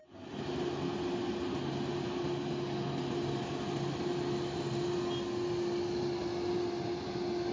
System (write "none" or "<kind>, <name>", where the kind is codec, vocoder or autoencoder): none